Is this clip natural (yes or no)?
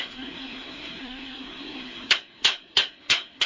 no